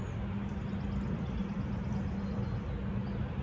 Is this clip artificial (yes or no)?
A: no